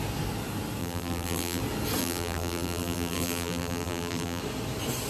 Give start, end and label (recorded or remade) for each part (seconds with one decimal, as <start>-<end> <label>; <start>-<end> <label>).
0.0-0.8 recorded; 0.8-1.6 remade; 1.6-2.0 recorded; 2.0-4.4 remade; 4.4-5.1 recorded